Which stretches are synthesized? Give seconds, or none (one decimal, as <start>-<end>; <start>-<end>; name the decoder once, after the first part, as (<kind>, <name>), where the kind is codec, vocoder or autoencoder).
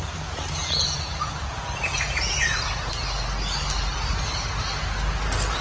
0.6-2.9 (vocoder, Vocos)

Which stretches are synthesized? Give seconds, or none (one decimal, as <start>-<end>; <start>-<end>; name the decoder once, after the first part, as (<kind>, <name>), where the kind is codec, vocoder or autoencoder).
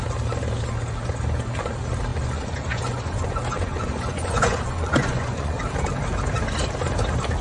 2.1-5.6 (vocoder, Vocos)